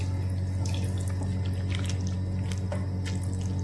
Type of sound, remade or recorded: recorded